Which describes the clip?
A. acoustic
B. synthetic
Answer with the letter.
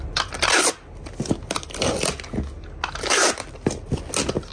A